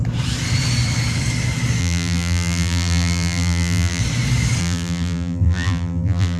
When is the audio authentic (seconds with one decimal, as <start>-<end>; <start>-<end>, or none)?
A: 0.0-1.8; 4.0-4.6